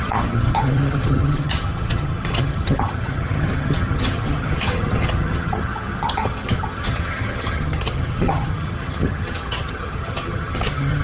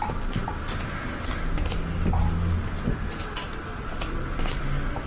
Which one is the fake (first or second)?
first